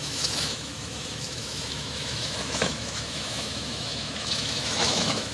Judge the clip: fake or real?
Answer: fake